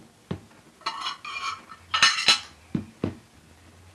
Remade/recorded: recorded